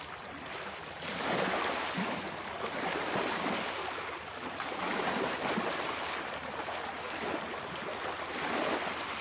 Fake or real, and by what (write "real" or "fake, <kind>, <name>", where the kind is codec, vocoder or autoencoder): real